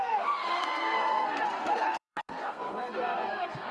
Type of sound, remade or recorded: remade